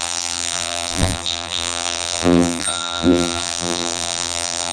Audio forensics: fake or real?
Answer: fake